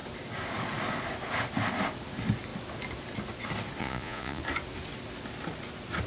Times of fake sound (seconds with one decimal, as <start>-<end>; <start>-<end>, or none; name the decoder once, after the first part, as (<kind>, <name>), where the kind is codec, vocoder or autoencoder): 3.8-4.4 (vocoder, Vocos)

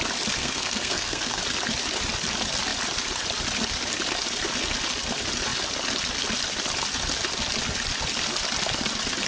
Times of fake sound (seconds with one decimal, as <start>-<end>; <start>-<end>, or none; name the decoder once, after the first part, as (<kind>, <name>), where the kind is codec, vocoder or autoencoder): 0.4-1.4 (codec, SNAC)

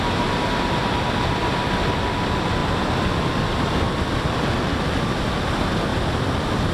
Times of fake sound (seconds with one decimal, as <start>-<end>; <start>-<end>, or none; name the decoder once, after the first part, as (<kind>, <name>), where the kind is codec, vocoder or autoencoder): none

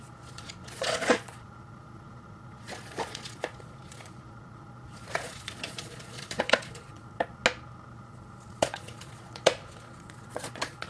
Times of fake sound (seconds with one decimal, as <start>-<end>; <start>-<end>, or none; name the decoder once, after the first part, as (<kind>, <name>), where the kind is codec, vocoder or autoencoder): 0.0-7.4 (vocoder, Vocos); 8.0-10.9

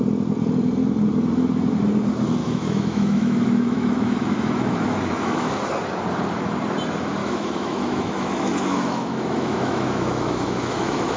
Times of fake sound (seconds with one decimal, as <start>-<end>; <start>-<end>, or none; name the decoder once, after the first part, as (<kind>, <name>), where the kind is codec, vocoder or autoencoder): 2.4-5.5 (autoencoder, DAC-VAE); 7.2-11.2

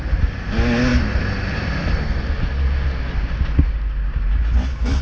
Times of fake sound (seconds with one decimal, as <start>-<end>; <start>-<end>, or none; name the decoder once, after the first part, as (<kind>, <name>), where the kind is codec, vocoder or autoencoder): none

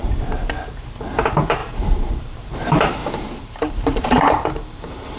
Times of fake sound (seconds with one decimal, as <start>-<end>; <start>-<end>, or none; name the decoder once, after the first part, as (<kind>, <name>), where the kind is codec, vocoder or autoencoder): 1.2-3.0 (vocoder, BigVGAN v2); 3.7-5.2